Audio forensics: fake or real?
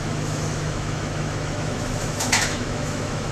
fake